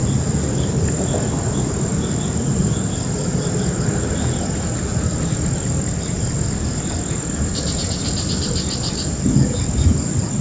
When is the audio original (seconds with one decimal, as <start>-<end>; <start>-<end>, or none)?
0.0-0.5; 1.9-2.6